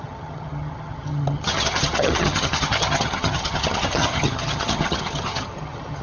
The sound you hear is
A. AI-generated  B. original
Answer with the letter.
A